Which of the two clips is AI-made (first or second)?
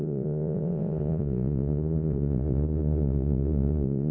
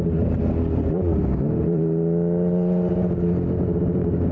first